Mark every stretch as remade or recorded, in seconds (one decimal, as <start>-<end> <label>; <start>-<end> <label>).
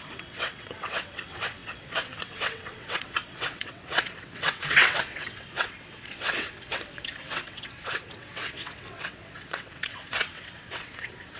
0.0-11.4 remade